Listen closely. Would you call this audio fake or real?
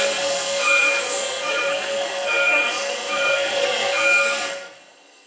fake